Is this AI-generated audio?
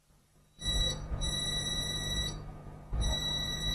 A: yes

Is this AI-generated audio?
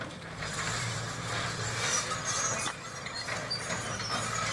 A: yes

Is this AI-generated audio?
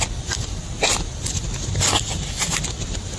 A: no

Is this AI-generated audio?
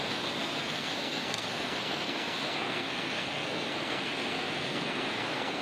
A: yes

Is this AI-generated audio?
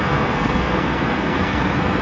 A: yes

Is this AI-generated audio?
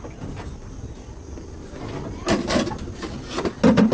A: no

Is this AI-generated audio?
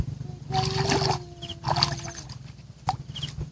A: no